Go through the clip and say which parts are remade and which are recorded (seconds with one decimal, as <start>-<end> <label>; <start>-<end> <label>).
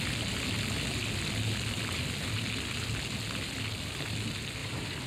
0.0-4.6 recorded; 4.6-5.1 remade